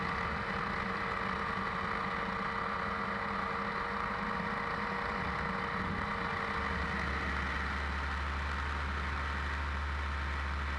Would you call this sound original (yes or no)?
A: yes